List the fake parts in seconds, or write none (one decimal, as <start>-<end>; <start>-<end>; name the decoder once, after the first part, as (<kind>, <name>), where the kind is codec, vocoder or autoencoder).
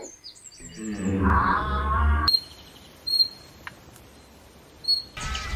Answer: 1.4-4.8 (vocoder, BigVGAN v2)